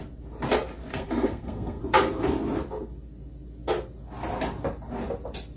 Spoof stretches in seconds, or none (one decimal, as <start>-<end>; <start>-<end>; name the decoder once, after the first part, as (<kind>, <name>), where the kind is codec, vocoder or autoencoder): 0.9-1.8 (codec, SNAC)